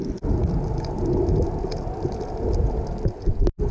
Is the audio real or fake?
real